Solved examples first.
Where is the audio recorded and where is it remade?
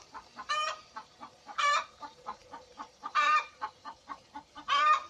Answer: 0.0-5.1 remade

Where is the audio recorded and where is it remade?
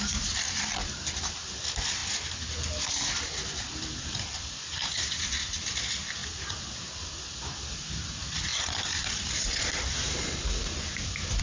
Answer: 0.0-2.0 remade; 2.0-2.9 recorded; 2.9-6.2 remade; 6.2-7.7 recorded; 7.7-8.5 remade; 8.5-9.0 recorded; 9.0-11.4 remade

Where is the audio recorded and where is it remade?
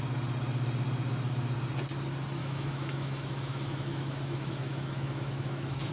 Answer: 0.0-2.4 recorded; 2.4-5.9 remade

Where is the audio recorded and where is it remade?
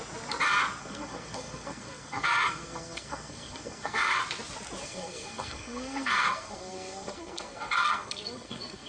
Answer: 0.0-0.8 recorded; 0.8-4.2 remade; 4.2-4.8 recorded; 4.8-8.9 remade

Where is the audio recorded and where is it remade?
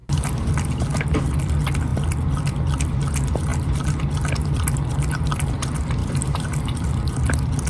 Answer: 0.0-0.5 remade; 0.5-6.0 recorded; 6.0-6.9 remade; 6.9-7.7 recorded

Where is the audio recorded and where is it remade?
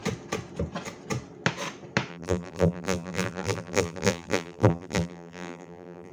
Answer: 0.0-2.1 recorded; 2.1-6.1 remade